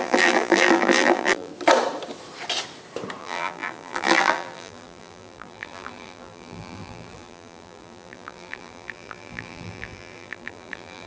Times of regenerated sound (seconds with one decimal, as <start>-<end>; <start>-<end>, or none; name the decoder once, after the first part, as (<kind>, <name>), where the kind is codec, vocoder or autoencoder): 0.0-1.5 (vocoder, BigVGAN v2); 3.2-11.1